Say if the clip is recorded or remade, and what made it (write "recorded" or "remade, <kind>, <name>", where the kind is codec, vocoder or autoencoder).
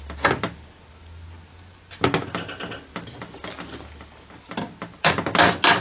recorded